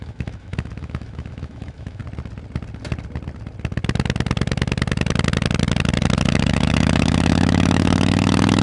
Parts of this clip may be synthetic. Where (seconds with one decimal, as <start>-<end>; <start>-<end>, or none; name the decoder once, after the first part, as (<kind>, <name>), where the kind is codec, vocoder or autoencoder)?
0.0-2.0 (autoencoder, DAC-VAE); 6.3-8.6